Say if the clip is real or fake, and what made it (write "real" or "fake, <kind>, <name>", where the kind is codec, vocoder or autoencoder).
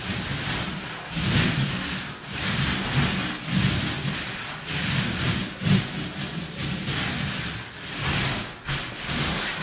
real